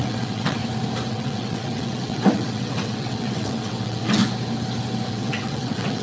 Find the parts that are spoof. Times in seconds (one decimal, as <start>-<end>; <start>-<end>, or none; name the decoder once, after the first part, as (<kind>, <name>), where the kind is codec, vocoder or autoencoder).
0.0-0.6 (vocoder, WaveNeXt); 1.1-4.2; 5.1-6.0